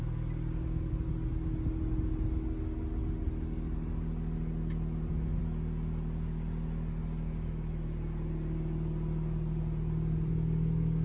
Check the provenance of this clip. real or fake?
real